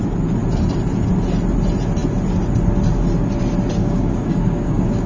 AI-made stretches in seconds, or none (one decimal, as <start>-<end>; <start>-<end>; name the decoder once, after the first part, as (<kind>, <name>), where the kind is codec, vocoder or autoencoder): 3.8-5.1 (codec, DAC)

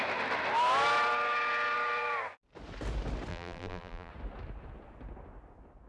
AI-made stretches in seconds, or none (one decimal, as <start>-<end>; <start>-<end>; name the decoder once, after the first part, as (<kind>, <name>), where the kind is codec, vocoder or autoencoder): 3.3-4.1 (vocoder, BigVGAN v2)